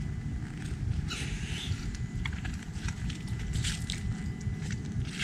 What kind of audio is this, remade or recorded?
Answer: recorded